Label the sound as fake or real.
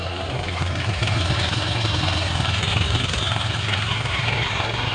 fake